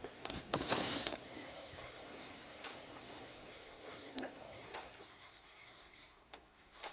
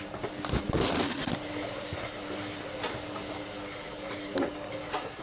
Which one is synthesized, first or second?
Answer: first